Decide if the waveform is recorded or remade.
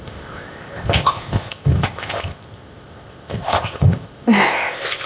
remade